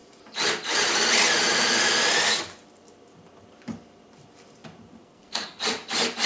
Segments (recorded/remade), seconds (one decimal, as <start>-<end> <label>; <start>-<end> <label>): 0.0-5.0 recorded; 5.0-5.6 remade; 5.6-6.3 recorded